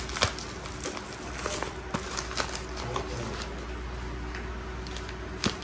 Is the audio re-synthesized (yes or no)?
no